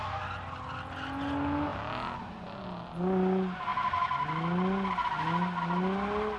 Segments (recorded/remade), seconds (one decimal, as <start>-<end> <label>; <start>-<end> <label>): 0.0-6.4 recorded